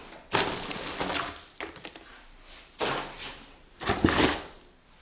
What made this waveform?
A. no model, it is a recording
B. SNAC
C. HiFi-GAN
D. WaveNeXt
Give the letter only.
A